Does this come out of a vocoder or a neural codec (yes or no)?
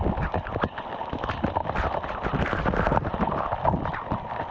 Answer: no